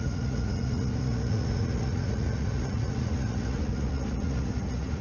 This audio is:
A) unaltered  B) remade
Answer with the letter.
B